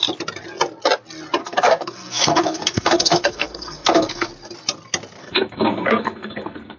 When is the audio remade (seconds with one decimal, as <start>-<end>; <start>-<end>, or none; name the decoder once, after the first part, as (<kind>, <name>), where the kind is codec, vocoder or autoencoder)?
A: 1.4-4.3 (codec, SNAC); 5.2-6.8